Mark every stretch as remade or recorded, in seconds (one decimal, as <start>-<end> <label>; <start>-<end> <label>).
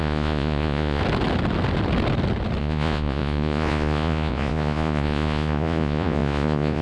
0.0-1.0 remade; 1.0-2.6 recorded; 2.6-6.8 remade